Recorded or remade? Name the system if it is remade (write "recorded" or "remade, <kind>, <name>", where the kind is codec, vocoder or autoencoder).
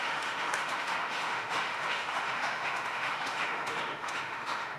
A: remade, autoencoder, DAC-VAE